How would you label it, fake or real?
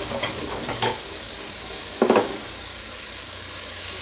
fake